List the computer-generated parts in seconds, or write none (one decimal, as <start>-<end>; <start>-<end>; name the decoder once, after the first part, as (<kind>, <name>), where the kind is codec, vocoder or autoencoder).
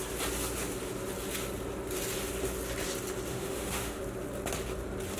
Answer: 3.3-4.0 (autoencoder, DAC-VAE)